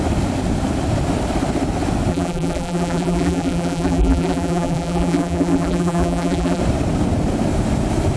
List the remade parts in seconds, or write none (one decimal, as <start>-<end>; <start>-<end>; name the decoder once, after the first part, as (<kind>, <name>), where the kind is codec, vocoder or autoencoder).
2.1-6.6 (vocoder, BigVGAN v2)